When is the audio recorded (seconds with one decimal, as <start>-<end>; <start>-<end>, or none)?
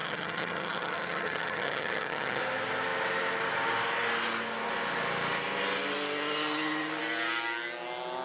2.4-8.2